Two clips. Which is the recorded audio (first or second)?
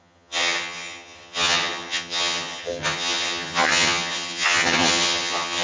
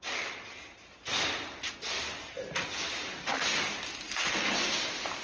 second